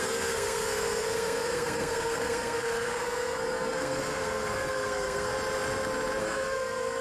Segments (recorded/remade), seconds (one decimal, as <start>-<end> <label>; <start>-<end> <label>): 0.0-5.3 remade; 5.3-6.2 recorded; 6.2-7.0 remade